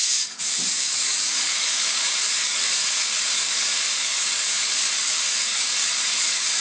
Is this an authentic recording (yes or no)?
no